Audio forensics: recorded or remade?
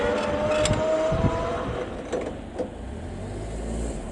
recorded